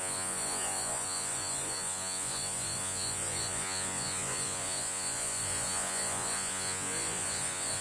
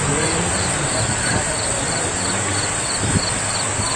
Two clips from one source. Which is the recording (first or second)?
second